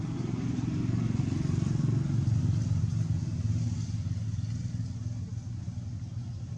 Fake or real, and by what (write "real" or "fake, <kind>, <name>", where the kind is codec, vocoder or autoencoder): real